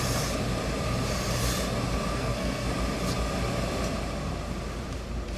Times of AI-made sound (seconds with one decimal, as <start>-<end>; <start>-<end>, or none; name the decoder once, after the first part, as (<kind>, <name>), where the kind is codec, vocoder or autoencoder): 2.1-2.7 (codec, SNAC)